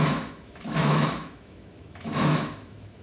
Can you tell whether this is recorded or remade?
remade